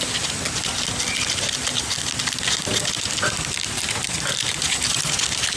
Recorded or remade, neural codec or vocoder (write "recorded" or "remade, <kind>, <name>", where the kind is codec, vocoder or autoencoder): recorded